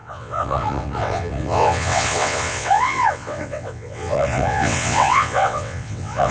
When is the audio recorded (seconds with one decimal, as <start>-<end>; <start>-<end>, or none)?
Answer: none